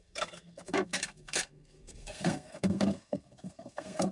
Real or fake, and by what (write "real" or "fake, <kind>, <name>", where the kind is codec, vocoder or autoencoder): fake, codec, SNAC